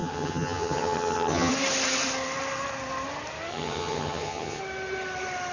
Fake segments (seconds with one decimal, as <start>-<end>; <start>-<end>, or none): 0.0-1.5; 3.5-4.6